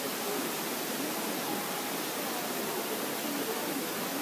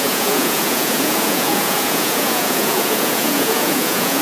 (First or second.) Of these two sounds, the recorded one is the first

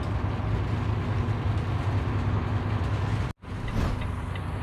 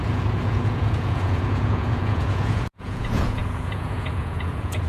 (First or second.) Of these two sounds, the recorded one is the first